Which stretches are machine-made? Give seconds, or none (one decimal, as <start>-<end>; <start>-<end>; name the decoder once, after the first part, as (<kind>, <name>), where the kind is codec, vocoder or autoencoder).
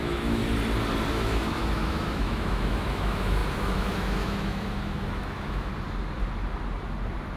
0.0-0.4 (autoencoder, DAC-VAE); 1.1-5.7